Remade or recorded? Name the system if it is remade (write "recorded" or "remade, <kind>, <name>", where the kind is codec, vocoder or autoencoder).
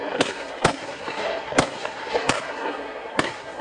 remade, codec, SNAC